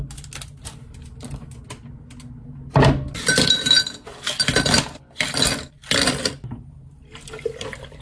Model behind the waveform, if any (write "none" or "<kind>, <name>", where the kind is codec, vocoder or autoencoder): none